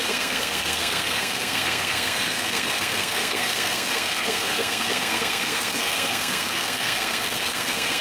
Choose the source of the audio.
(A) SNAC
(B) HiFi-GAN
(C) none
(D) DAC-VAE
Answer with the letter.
A